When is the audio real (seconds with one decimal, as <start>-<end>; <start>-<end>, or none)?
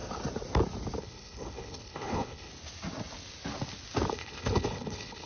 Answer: 0.0-1.0; 2.5-4.1